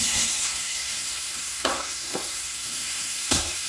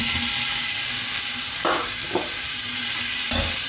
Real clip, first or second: second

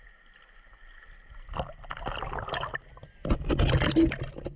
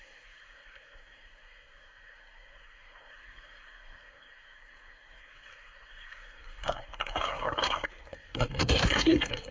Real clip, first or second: first